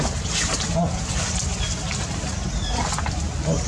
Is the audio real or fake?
real